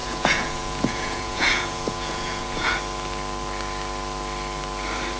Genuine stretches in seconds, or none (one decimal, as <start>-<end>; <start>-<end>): 2.7-5.2